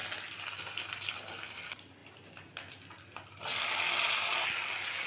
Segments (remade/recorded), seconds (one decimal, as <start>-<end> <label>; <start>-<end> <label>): 0.0-5.1 recorded